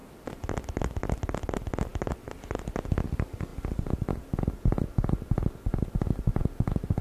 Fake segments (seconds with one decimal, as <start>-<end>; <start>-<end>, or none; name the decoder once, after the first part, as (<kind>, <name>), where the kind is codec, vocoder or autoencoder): 0.0-3.5 (vocoder, BigVGAN v2); 5.9-7.0